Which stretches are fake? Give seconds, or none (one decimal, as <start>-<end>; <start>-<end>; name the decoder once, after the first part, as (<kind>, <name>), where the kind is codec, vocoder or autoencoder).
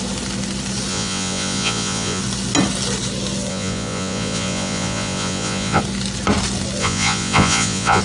0.9-2.2 (vocoder, Vocos); 3.5-5.8; 6.8-8.0